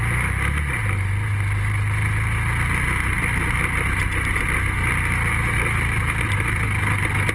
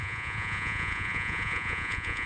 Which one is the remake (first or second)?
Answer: second